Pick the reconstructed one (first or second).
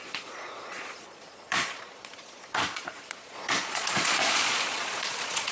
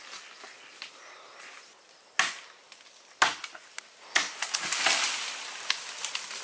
first